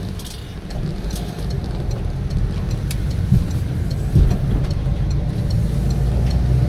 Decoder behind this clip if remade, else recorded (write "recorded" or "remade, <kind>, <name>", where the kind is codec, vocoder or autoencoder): recorded